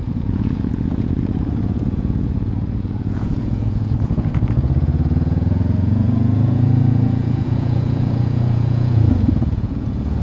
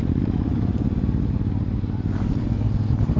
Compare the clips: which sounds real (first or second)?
second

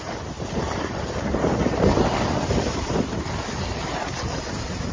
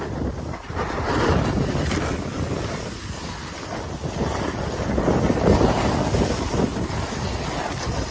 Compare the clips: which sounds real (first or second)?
second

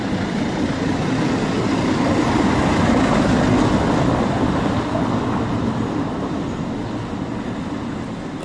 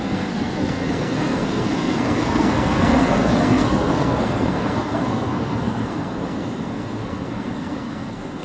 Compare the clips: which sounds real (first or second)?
first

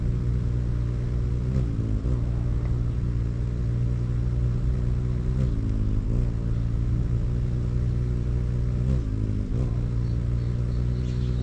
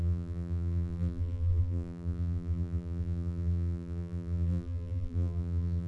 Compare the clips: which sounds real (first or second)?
first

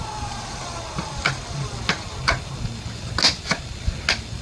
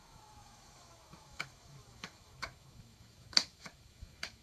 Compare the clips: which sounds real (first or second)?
first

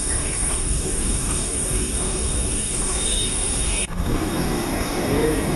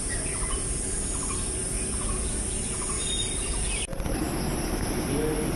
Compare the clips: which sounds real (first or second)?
second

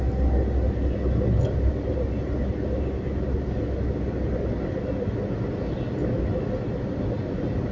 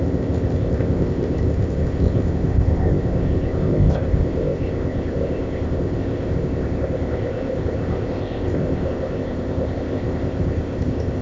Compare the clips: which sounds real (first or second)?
first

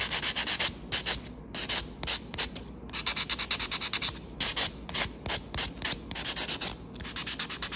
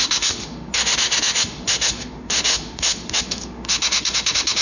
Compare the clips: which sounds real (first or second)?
first